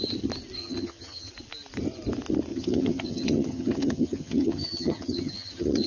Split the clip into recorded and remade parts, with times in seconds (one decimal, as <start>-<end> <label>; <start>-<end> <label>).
0.0-0.6 recorded; 0.6-1.3 remade; 1.3-2.5 recorded; 2.5-5.9 remade